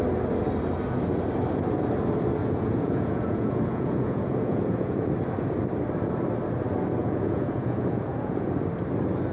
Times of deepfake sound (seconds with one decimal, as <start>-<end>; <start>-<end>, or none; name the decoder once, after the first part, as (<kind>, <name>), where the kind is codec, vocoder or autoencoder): 2.4-5.1 (vocoder, Vocos); 7.0-8.5